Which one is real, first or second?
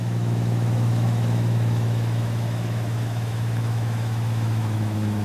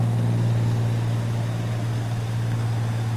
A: second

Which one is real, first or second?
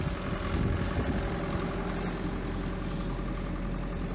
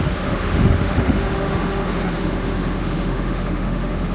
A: first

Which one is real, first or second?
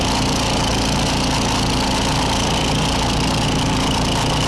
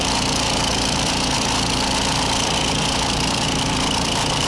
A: first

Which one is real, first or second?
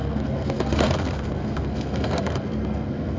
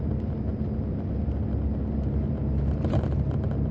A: second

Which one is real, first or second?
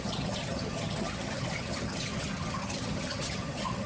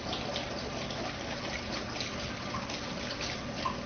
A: second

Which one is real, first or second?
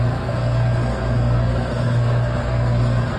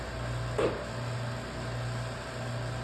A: second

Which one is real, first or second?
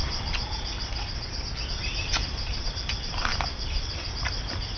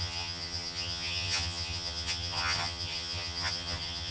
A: first